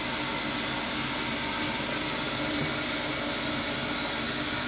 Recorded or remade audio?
recorded